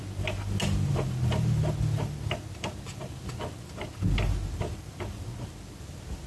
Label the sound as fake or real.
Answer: real